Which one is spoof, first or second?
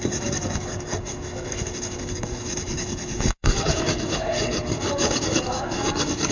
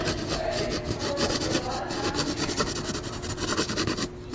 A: first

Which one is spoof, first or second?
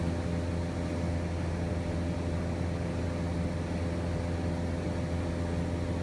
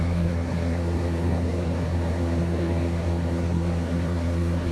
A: second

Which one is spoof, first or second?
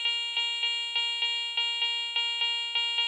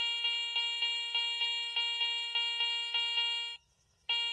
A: second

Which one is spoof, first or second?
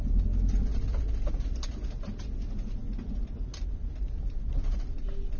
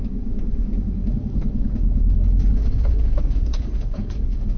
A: second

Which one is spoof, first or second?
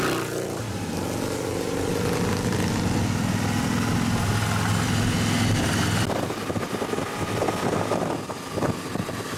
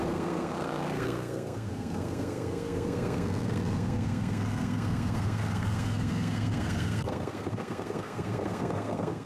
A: second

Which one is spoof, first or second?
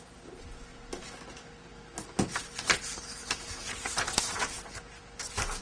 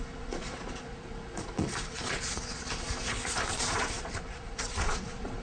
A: second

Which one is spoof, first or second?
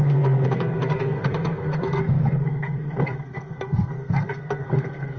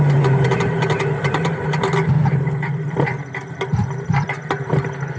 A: first